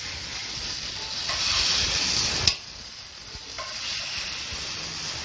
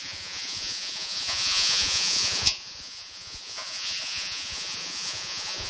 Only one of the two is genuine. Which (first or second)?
first